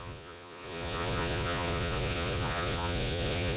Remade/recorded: remade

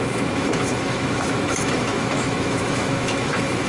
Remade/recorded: remade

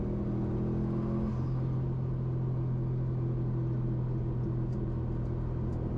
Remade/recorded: recorded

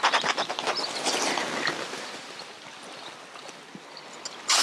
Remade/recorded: recorded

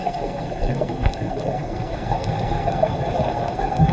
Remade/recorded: remade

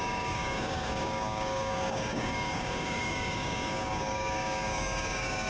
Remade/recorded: remade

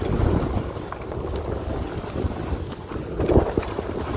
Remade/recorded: recorded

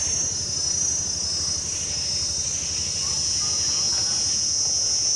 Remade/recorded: recorded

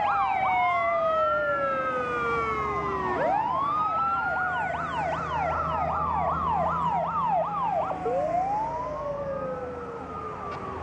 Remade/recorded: recorded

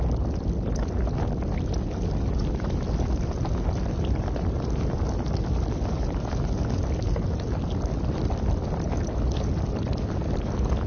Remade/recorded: recorded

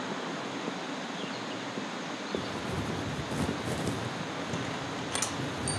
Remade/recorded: recorded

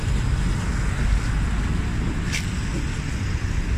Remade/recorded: recorded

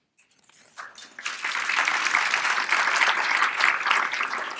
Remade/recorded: recorded